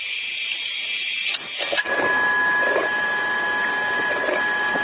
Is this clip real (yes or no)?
yes